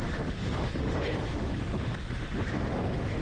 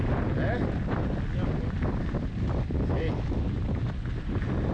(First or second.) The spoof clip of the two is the first